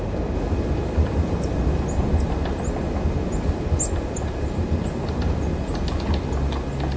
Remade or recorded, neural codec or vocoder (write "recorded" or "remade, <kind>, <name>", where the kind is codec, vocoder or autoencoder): recorded